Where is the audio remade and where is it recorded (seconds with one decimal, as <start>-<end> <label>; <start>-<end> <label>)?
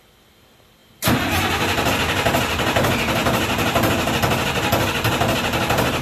0.0-0.8 recorded; 0.8-1.9 remade; 1.9-3.2 recorded; 3.2-4.1 remade; 4.1-6.0 recorded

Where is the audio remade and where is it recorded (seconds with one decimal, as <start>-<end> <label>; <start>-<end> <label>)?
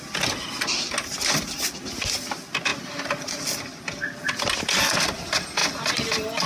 0.0-6.5 recorded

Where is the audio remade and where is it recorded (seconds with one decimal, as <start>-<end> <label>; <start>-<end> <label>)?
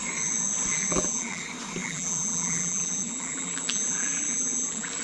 0.0-0.7 recorded; 0.7-1.4 remade; 1.4-1.8 recorded; 1.8-5.0 remade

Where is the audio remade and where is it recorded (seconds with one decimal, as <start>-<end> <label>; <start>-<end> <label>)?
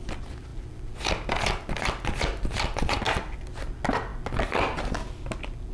0.0-5.7 recorded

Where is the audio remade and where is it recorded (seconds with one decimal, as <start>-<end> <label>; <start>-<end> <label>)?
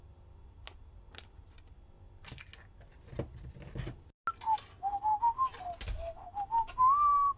0.0-7.4 recorded